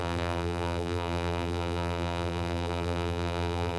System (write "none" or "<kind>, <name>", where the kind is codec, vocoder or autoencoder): vocoder, BigVGAN v2